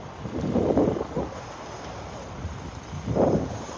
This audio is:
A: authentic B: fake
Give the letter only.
A